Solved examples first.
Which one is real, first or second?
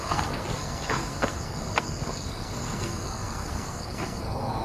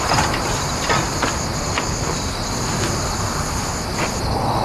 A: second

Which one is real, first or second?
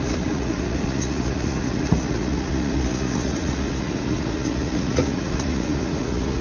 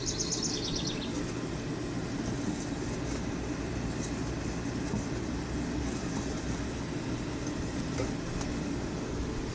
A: second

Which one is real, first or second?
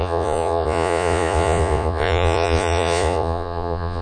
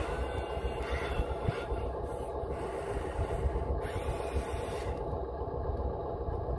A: second